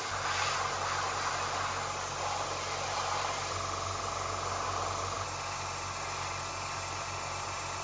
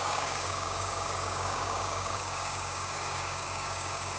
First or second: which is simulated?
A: second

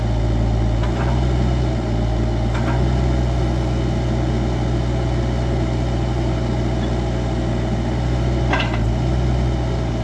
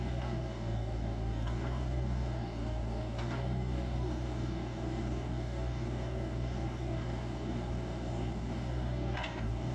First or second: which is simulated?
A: second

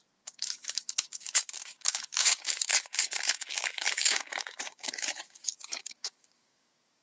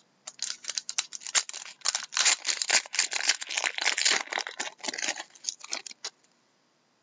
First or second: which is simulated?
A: first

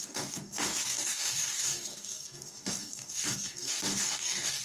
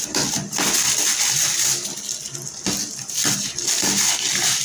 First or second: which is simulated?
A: first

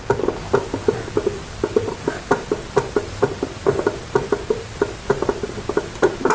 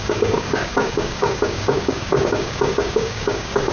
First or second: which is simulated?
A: second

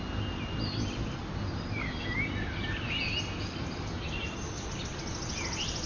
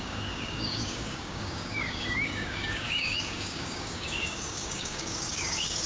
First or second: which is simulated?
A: second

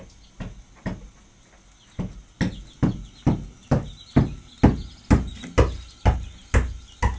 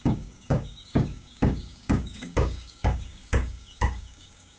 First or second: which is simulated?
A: second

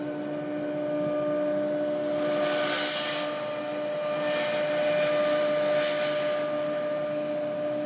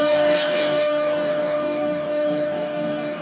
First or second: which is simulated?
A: second